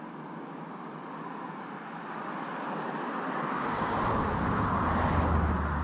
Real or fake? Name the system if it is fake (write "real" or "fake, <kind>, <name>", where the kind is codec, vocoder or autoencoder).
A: real